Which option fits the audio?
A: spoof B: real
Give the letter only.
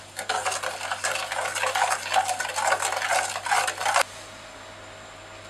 B